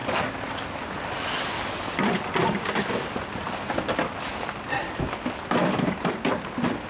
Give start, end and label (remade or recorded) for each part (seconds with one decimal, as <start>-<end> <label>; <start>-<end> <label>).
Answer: 0.0-6.9 recorded